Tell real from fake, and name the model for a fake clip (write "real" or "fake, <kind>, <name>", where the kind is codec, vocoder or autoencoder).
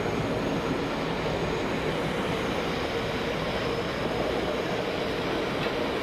real